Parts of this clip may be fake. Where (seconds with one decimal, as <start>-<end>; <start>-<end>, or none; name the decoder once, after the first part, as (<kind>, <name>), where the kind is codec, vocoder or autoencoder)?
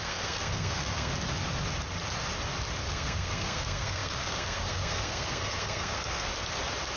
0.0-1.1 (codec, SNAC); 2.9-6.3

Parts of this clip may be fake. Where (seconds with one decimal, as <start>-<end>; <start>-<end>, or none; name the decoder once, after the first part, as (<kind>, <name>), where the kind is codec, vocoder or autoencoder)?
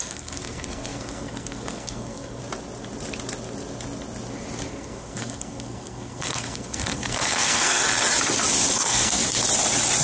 0.0-2.4 (codec, SNAC); 4.7-7.8; 8.7-9.2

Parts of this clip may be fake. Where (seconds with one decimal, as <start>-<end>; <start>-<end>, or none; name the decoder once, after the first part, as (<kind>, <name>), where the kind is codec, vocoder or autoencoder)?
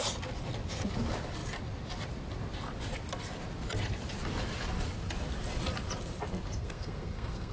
6.6-7.5 (codec, SNAC)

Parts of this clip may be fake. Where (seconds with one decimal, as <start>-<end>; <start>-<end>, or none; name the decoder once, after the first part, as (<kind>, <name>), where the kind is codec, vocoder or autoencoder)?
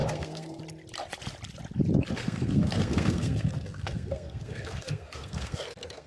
0.0-0.6 (codec, SNAC); 2.2-6.1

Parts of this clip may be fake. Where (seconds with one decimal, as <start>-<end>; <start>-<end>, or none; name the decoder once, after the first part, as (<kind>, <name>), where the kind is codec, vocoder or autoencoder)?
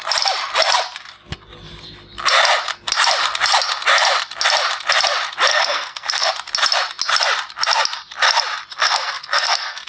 5.5-6.3 (codec, SNAC); 8.7-9.9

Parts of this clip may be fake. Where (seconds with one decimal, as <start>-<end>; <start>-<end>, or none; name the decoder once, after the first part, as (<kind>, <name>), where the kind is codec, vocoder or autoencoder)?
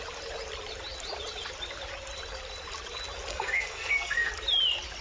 3.3-4.3 (codec, SNAC)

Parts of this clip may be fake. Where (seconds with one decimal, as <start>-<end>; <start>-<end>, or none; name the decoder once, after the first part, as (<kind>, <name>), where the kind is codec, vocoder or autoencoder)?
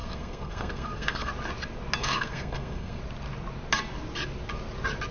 0.0-1.3 (codec, SNAC); 2.0-3.0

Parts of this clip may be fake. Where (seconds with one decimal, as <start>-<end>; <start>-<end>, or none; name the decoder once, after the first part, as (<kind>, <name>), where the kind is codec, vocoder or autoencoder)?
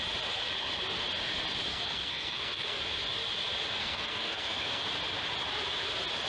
1.7-2.8 (codec, SNAC); 3.8-4.8